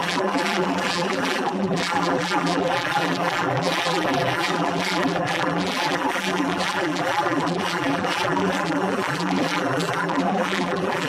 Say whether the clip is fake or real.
fake